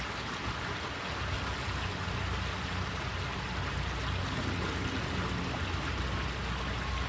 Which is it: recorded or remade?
recorded